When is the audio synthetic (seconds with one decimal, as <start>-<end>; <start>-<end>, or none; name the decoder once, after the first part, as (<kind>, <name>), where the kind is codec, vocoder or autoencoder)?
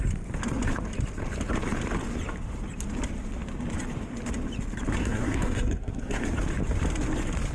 5.0-6.3 (codec, SNAC)